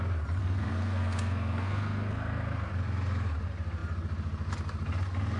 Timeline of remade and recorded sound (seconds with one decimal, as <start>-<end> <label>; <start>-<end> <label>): 0.0-0.4 recorded; 0.4-2.7 remade; 2.7-5.4 recorded